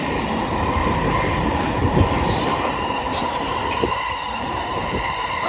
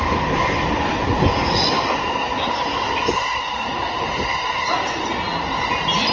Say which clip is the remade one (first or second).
first